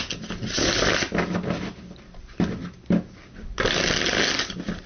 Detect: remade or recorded recorded